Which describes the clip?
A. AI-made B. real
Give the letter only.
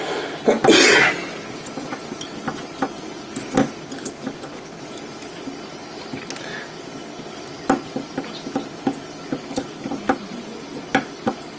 B